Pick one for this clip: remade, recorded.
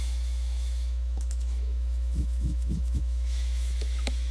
remade